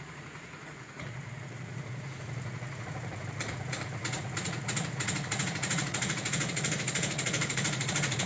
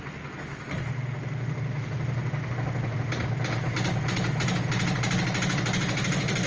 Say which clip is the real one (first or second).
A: second